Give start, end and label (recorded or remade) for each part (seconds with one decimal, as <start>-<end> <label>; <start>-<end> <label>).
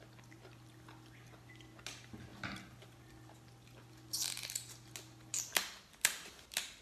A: 0.0-6.8 recorded